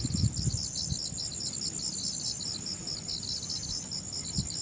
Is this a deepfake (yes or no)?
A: no